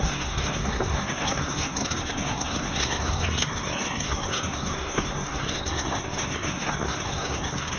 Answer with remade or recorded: remade